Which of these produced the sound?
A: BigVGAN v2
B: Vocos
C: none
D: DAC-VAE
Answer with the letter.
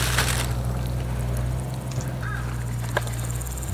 C